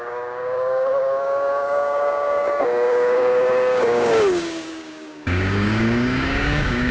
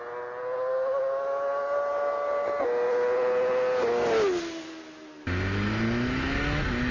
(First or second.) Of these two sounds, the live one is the second